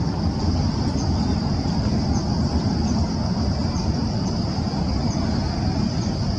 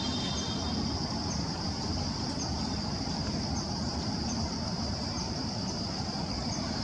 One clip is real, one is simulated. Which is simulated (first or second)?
second